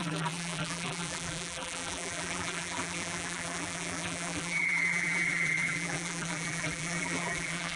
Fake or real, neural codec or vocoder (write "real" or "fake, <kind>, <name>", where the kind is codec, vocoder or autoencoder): fake, vocoder, BigVGAN v2